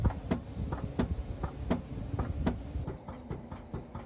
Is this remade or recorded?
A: recorded